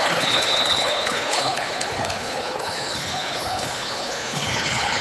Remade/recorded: remade